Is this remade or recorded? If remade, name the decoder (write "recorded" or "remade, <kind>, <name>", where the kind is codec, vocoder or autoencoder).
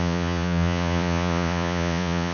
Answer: remade, vocoder, Vocos